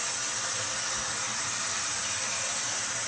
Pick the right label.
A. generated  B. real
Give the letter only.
B